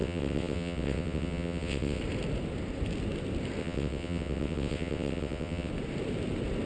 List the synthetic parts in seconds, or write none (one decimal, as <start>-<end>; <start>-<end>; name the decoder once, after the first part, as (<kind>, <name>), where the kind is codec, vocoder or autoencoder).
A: 0.0-2.0 (vocoder, WaveNeXt); 3.6-5.7